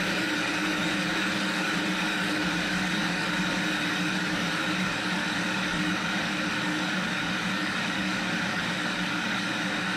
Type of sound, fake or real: fake